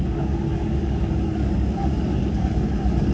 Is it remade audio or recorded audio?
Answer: remade